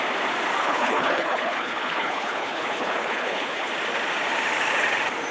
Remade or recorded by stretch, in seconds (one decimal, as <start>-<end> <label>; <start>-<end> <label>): 0.0-0.6 recorded; 0.6-3.7 remade; 3.7-5.3 recorded